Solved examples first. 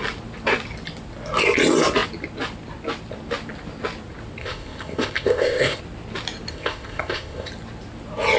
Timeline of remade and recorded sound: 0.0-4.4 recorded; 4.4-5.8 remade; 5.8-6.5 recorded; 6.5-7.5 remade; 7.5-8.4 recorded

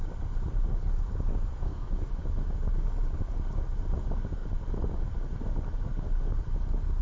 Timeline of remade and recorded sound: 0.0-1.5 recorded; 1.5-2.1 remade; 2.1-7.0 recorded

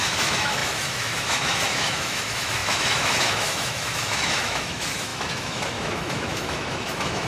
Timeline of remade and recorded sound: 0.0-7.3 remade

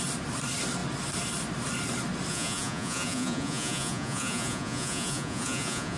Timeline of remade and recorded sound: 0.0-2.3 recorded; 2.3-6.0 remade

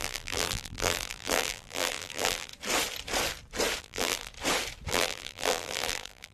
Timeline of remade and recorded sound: 0.0-2.5 remade; 2.5-3.8 recorded; 3.8-4.3 remade; 4.3-4.9 recorded; 4.9-6.3 remade